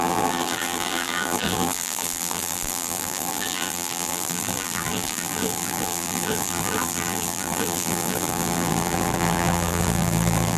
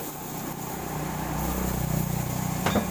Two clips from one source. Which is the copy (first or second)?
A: first